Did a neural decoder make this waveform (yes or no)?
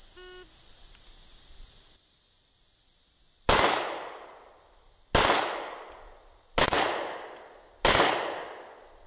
no